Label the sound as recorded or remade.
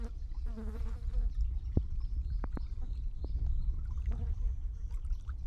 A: recorded